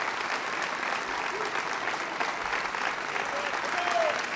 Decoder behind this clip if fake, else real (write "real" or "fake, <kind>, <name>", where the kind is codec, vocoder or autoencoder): real